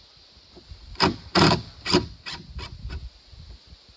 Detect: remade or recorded recorded